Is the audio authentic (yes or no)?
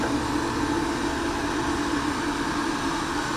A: yes